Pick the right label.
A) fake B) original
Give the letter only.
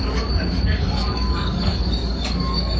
A